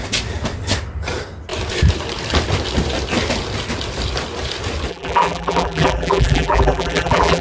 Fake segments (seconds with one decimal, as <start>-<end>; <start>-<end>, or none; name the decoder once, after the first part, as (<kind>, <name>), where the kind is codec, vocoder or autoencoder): 4.9-7.4 (vocoder, BigVGAN v2)